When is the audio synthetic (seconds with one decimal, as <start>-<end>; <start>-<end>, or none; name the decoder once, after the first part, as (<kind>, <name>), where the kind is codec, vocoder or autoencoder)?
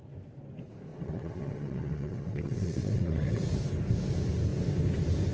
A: 0.9-3.4 (vocoder, WaveNeXt)